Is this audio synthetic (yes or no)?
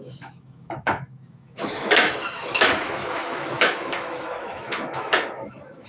yes